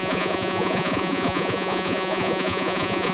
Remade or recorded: remade